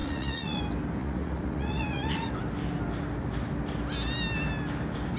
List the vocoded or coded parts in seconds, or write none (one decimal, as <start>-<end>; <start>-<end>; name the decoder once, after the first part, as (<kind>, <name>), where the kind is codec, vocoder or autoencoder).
0.0-0.6 (vocoder, Vocos); 1.0-2.3